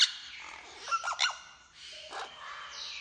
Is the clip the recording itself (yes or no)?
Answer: yes